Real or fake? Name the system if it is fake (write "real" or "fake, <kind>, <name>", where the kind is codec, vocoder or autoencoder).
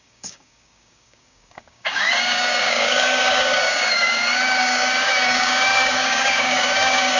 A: fake, codec, DAC